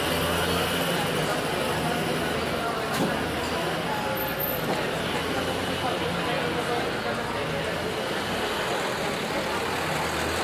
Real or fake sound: real